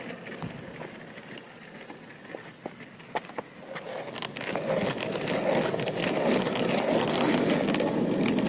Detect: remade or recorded recorded